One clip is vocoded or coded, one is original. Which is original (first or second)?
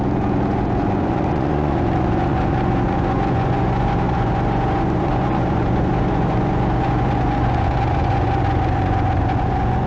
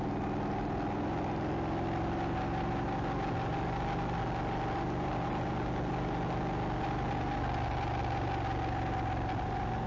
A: second